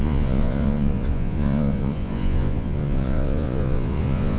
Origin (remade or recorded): remade